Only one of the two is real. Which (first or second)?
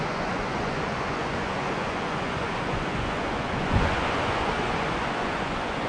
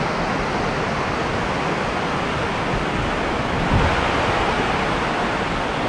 second